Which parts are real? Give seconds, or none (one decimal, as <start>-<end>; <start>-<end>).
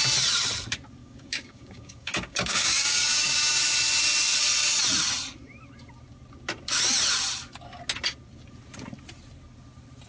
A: 0.0-1.0; 3.6-10.1